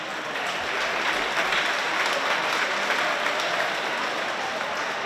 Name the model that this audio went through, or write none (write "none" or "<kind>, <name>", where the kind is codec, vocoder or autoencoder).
none